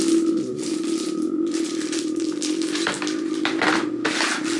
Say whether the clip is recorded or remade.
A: recorded